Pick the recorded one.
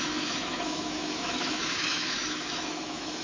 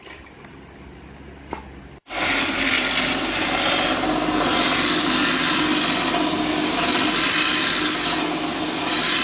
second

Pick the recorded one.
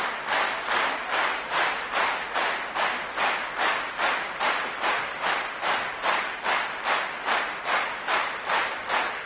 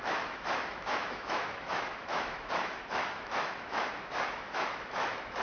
first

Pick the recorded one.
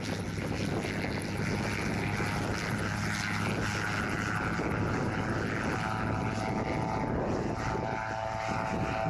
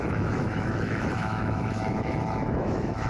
first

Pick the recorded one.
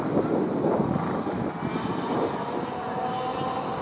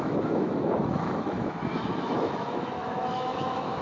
first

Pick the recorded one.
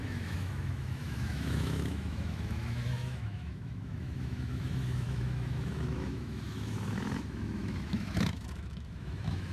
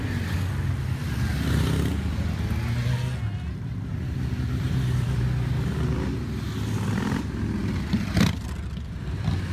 second